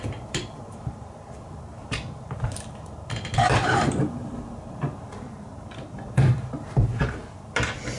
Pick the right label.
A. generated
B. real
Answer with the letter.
A